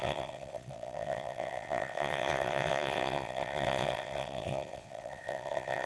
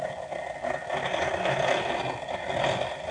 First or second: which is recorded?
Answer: second